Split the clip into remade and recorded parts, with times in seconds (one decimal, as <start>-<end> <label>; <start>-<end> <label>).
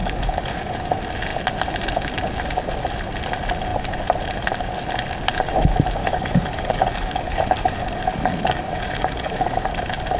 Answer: 0.0-0.7 remade; 0.7-6.0 recorded; 6.0-9.7 remade; 9.7-10.2 recorded